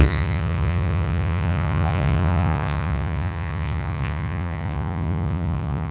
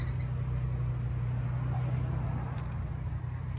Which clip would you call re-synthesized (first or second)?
first